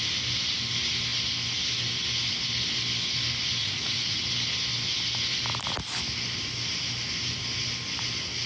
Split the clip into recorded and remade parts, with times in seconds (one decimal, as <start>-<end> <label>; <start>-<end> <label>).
0.0-3.6 recorded; 3.6-4.2 remade; 4.2-8.5 recorded